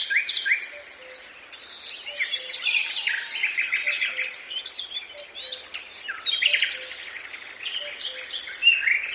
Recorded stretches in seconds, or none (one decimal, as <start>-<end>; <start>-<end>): 0.0-9.1